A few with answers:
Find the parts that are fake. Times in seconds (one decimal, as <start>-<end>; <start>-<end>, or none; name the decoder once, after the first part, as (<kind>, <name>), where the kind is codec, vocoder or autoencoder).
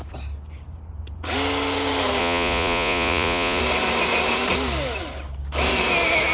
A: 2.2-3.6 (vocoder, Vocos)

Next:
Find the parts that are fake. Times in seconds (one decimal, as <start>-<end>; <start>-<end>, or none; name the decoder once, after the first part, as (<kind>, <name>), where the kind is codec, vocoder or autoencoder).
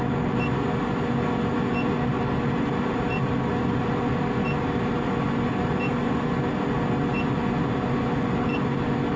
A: none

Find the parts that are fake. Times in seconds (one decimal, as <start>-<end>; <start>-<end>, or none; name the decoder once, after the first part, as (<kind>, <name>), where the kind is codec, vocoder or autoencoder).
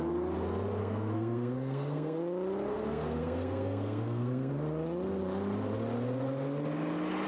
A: 0.8-2.2 (codec, SNAC); 2.7-4.5